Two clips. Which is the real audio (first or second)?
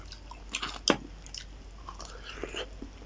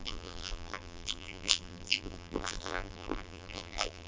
first